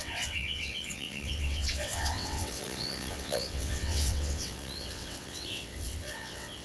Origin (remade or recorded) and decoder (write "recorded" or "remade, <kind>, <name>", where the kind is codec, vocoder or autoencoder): remade, vocoder, WaveNeXt